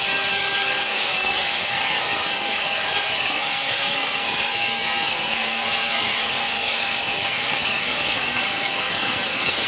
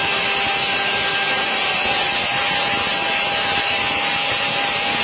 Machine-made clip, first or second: first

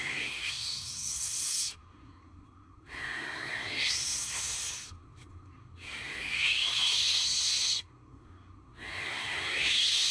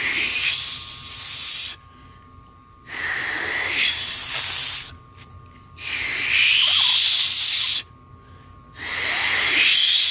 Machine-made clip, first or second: first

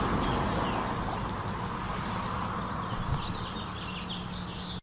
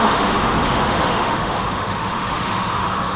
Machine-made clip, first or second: second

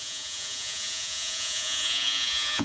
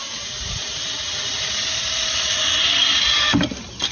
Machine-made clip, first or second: first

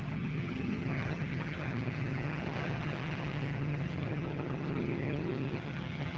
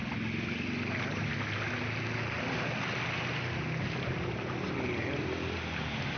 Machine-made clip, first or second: first